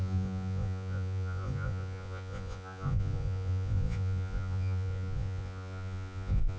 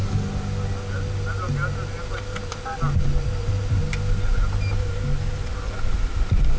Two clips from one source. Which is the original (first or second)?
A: second